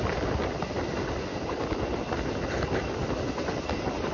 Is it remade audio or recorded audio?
recorded